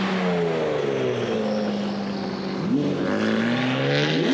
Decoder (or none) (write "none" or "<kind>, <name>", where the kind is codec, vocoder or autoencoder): none